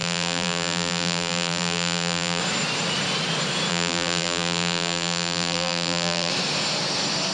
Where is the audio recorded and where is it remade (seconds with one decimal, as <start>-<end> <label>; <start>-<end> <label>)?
0.0-2.4 remade; 2.4-3.7 recorded; 3.7-6.3 remade; 6.3-7.3 recorded